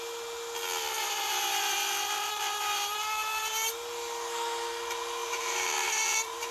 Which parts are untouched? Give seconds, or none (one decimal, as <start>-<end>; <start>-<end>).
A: 0.0-1.0; 3.7-5.2